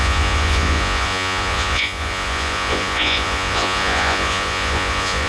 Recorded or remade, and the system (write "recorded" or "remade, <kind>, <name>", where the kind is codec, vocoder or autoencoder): remade, vocoder, Vocos